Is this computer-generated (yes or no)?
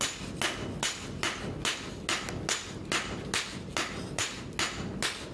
no